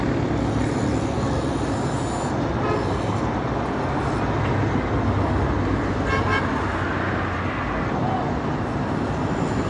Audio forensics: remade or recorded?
recorded